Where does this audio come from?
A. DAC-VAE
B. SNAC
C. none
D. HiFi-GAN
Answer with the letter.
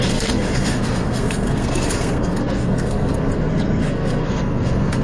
B